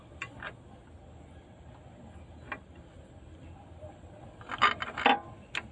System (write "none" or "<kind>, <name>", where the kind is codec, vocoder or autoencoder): none